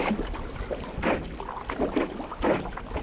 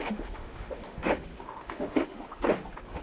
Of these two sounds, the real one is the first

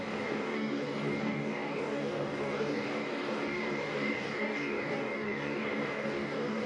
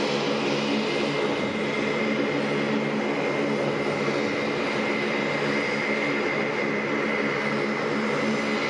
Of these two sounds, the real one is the second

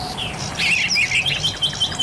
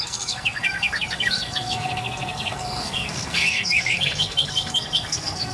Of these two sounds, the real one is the first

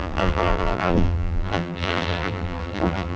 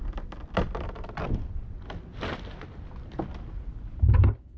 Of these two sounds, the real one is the second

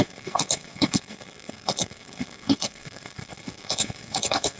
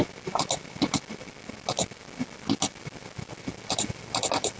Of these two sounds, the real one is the second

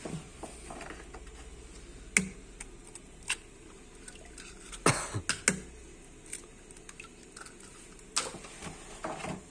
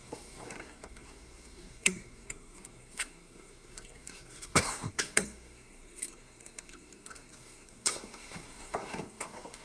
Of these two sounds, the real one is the first